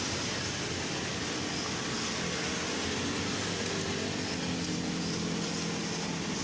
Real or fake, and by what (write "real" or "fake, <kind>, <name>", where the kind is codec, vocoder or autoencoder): real